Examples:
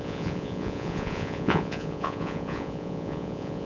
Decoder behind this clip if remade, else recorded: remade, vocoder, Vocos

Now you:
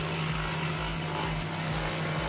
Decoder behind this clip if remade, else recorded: recorded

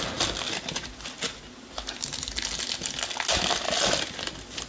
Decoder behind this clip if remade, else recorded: recorded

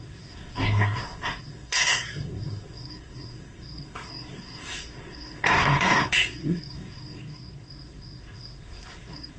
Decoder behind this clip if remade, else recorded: remade, codec, SNAC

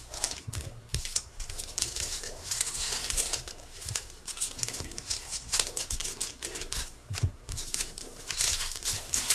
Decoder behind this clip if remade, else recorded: remade, codec, SNAC